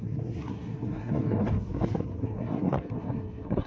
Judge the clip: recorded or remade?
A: remade